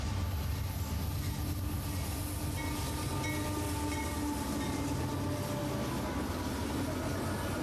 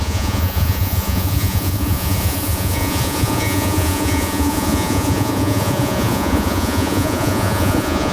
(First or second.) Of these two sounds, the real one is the first